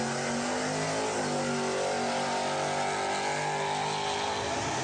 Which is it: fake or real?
real